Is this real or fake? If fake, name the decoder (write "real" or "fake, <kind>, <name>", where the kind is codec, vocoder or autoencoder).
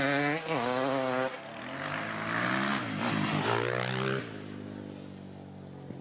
real